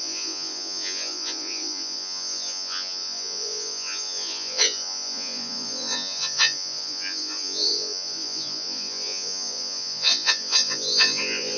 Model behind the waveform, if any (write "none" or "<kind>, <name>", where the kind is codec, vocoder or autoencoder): vocoder, Vocos